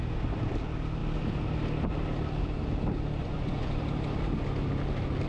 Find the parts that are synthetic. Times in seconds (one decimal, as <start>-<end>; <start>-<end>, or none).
3.2-3.8